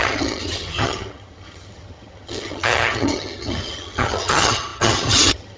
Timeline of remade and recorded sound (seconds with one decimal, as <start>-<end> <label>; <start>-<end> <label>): 0.0-5.6 remade